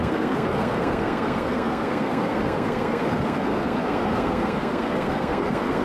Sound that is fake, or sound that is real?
fake